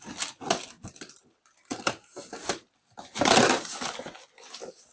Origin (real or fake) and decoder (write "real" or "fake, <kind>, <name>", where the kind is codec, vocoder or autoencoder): real